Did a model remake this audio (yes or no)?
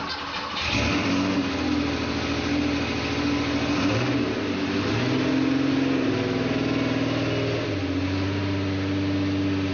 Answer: no